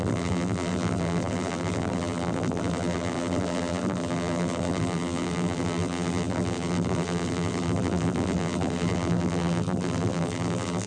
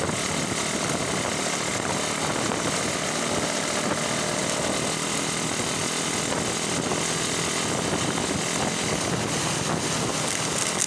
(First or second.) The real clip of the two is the second